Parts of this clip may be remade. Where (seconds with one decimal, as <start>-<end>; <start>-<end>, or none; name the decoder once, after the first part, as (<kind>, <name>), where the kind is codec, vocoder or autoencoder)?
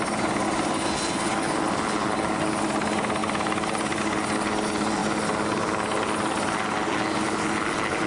3.2-4.0 (vocoder, BigVGAN v2)